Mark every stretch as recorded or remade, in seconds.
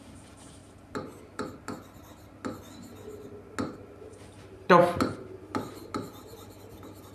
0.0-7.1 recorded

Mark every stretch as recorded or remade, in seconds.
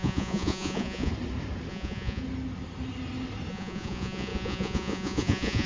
0.0-1.1 remade; 1.1-1.7 recorded; 1.7-2.2 remade; 2.2-3.5 recorded; 3.5-5.7 remade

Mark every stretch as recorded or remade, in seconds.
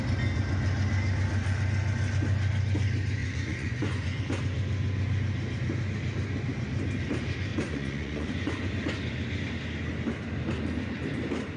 0.0-3.2 recorded; 3.2-4.2 remade; 4.2-7.5 recorded; 7.5-8.5 remade; 8.5-11.6 recorded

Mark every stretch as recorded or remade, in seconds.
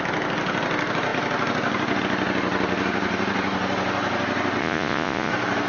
0.0-4.6 recorded; 4.6-5.3 remade; 5.3-5.7 recorded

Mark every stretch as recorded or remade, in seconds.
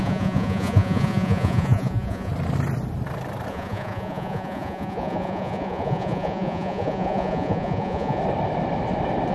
0.0-2.3 remade; 2.3-3.5 recorded; 3.5-8.2 remade; 8.2-9.3 recorded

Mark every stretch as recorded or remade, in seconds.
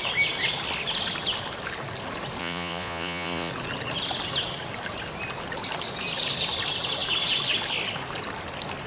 0.0-2.4 recorded; 2.4-3.5 remade; 3.5-8.9 recorded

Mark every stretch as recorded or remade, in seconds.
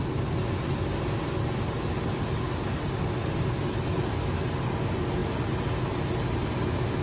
0.0-7.0 recorded